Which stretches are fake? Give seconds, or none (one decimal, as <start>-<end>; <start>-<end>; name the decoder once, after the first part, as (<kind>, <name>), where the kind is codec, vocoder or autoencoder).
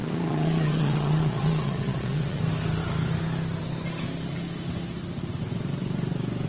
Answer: 0.0-2.4 (vocoder, Vocos)